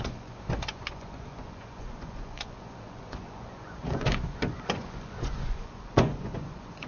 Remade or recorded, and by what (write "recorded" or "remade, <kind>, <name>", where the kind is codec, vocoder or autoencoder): remade, vocoder, Vocos